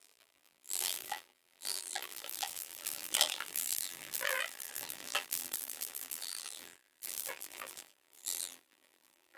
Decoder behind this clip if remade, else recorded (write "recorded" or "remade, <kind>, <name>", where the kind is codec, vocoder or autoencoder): remade, vocoder, BigVGAN v2